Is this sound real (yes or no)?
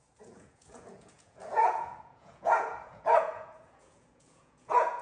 no